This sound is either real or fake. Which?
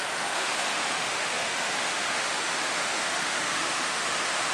fake